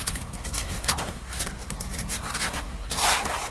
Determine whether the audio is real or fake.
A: fake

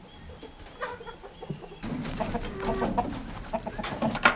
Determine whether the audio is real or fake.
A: real